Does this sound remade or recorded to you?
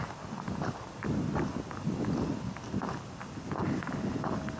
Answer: recorded